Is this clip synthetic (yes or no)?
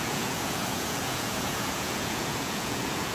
yes